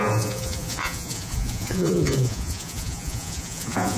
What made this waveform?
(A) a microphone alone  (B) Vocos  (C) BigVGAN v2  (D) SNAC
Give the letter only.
B